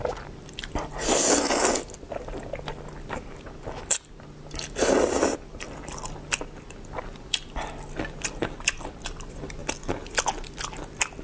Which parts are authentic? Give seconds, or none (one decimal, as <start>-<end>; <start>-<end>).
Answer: 0.0-11.2